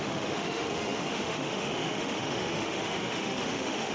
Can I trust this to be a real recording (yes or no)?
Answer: no